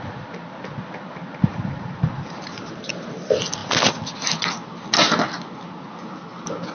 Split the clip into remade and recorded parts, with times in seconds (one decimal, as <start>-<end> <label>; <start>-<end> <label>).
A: 0.0-1.5 recorded; 1.5-2.9 remade; 2.9-6.7 recorded